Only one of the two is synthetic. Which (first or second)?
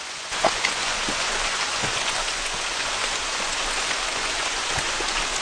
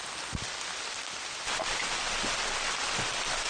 first